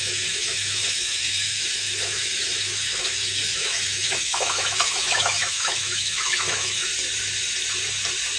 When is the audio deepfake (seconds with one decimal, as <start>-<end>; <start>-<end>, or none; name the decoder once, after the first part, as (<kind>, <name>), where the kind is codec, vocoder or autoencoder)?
0.0-6.9 (autoencoder, DAC-VAE)